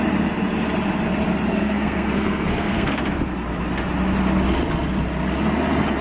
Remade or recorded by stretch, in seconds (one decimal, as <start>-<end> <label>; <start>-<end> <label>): 0.0-1.5 recorded; 1.5-3.0 remade; 3.0-6.0 recorded